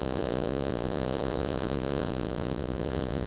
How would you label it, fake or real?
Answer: fake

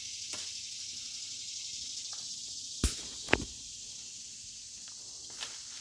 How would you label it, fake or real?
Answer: real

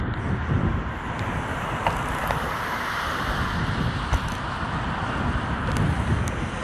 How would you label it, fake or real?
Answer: real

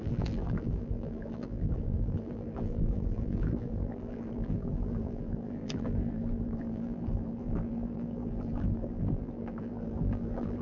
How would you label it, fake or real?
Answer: fake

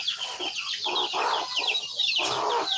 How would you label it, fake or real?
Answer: real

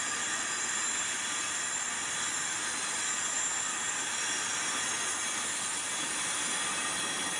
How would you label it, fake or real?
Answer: real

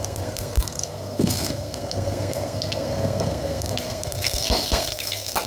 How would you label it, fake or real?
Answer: fake